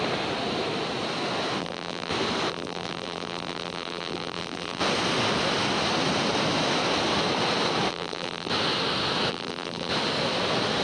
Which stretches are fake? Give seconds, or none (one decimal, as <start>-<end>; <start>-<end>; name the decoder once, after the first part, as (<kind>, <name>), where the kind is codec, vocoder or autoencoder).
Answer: 1.6-2.1 (vocoder, BigVGAN v2); 2.5-4.8; 7.9-8.5; 9.3-9.9